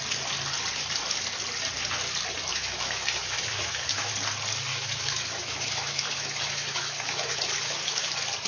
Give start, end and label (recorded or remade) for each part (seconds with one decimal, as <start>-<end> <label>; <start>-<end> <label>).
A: 0.0-2.5 recorded; 2.5-4.1 remade; 4.1-4.7 recorded; 4.7-8.1 remade; 8.1-8.5 recorded